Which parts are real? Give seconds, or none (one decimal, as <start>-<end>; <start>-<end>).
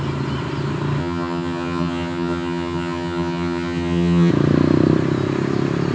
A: 0.0-1.0; 4.3-5.9